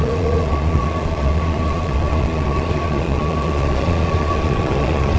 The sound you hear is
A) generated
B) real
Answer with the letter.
A